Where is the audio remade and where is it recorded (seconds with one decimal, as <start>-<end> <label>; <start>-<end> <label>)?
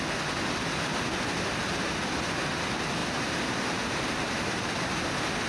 0.0-3.0 recorded; 3.0-5.0 remade; 5.0-5.5 recorded